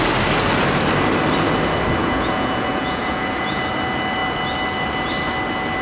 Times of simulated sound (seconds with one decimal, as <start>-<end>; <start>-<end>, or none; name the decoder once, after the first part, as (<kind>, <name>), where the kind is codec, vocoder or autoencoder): 2.0-3.6 (vocoder, Vocos)